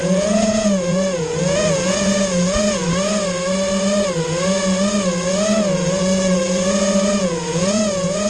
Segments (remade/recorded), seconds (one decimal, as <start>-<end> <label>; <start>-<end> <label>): 0.0-2.8 remade; 2.8-5.3 recorded; 5.3-8.3 remade